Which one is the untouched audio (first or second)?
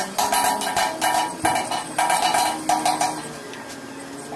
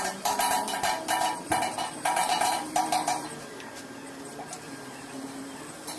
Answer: first